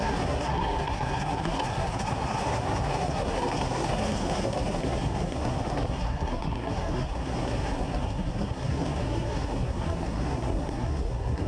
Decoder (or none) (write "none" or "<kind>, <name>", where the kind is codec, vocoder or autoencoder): codec, SNAC